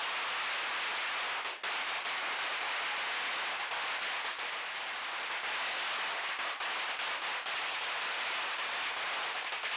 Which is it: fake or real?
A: real